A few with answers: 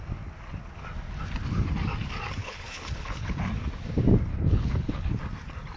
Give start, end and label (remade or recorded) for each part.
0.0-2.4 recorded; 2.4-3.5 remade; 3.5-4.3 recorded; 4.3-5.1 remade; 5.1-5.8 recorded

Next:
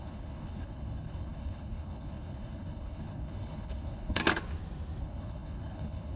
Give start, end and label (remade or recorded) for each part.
0.0-4.2 remade; 4.2-5.0 recorded; 5.0-6.2 remade

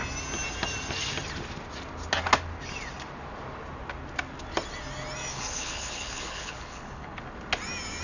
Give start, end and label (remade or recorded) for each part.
0.0-5.3 recorded; 5.3-7.2 remade; 7.2-8.0 recorded

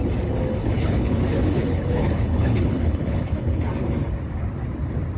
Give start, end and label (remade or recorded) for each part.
0.0-0.6 recorded; 0.6-3.7 remade; 3.7-5.2 recorded

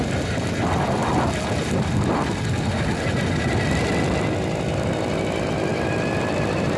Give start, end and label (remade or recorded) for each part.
0.0-6.8 recorded

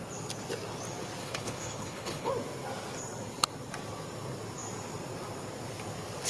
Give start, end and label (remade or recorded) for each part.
0.0-1.2 recorded; 1.2-2.3 remade; 2.3-6.3 recorded